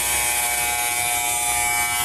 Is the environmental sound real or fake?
real